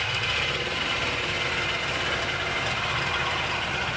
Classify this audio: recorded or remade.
recorded